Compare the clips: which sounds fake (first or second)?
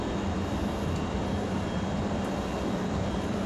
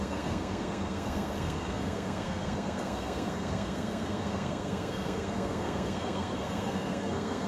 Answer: second